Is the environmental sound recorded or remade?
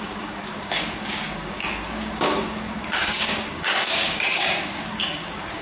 remade